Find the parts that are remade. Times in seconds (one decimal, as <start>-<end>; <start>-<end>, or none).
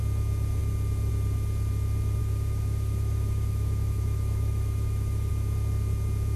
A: 2.2-5.3